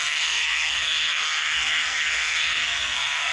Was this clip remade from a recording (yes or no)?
yes